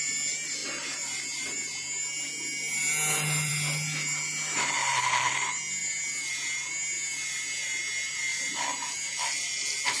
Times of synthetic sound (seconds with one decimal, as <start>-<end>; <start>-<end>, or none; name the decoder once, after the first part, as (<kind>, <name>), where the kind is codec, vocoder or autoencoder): none